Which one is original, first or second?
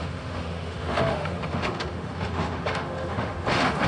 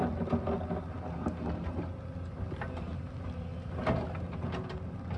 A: second